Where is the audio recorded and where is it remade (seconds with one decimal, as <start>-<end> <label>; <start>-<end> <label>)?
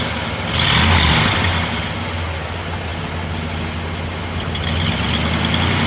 0.0-5.9 recorded